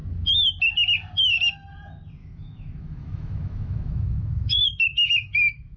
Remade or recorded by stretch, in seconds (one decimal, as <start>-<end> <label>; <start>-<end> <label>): 0.0-2.2 recorded; 2.2-5.8 remade